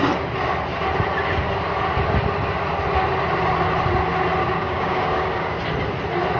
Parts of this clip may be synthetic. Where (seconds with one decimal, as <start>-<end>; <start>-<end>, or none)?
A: 4.4-5.6